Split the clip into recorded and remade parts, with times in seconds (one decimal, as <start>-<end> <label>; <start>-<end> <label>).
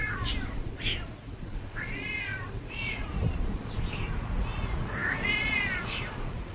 0.0-6.5 remade